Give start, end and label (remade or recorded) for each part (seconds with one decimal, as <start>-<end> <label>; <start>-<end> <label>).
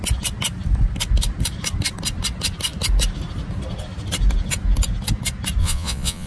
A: 0.0-5.6 recorded; 5.6-6.3 remade